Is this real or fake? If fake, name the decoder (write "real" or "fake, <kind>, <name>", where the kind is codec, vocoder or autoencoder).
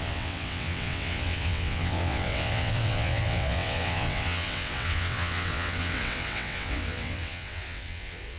fake, vocoder, WaveNeXt